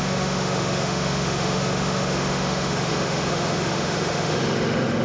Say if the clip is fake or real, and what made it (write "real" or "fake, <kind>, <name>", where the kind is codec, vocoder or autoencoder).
fake, autoencoder, DAC-VAE